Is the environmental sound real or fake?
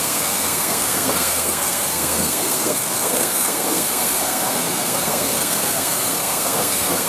fake